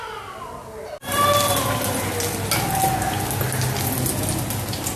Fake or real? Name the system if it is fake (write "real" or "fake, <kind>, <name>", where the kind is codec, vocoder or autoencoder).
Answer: real